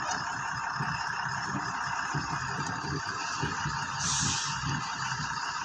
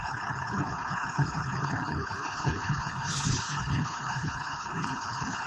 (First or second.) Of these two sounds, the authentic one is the first